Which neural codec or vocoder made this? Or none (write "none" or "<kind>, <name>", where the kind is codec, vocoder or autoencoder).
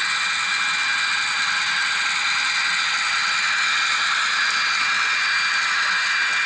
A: none